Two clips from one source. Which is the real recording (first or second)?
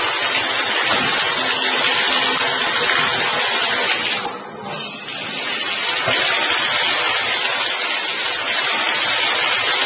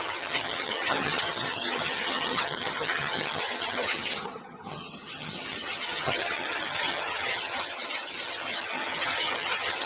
first